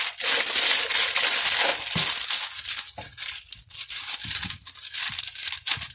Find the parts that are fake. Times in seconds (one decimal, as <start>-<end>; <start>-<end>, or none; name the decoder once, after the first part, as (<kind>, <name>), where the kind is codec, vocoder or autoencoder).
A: none